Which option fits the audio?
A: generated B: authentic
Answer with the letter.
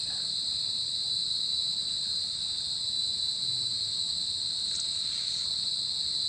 B